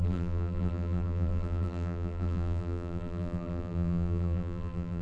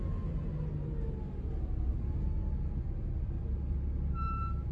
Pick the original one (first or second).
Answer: second